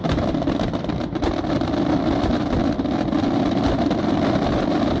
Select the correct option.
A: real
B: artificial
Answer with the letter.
B